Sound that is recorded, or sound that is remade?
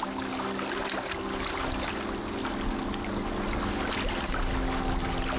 recorded